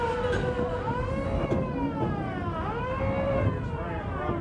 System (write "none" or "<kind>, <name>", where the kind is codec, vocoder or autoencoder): none